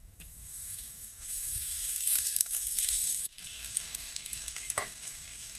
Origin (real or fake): fake